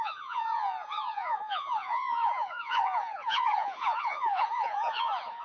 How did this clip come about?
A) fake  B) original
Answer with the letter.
A